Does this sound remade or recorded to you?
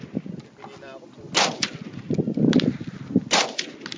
recorded